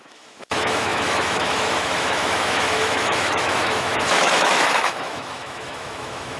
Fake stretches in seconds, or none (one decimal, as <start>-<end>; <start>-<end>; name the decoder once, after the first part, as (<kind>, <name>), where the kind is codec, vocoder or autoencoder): 0.0-6.4 (autoencoder, DAC-VAE)